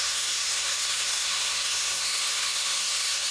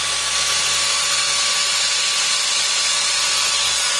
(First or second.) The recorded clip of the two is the second